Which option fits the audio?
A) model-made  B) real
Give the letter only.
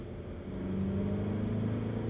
B